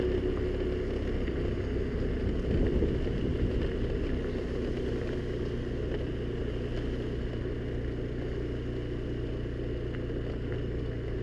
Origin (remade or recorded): recorded